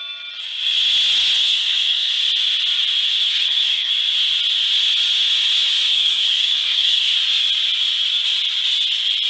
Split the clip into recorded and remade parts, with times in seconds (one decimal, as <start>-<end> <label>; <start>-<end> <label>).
0.0-1.4 recorded; 1.4-2.1 remade; 2.1-3.3 recorded; 3.3-3.9 remade; 3.9-5.9 recorded; 5.9-7.2 remade; 7.2-9.3 recorded